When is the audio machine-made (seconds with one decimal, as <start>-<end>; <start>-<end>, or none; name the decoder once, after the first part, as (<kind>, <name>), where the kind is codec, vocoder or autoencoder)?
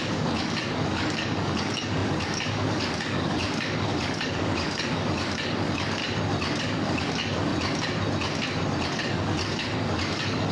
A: 0.0-6.0 (codec, DAC); 6.6-7.5; 8.9-10.5